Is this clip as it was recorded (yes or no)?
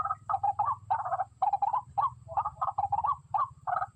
no